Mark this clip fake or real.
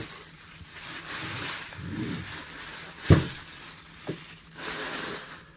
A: real